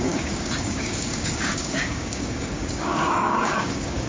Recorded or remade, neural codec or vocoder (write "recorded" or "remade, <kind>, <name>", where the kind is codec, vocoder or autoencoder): remade, codec, DAC